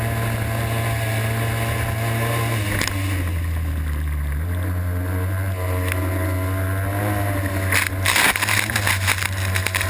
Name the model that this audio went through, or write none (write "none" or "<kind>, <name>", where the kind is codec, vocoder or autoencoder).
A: none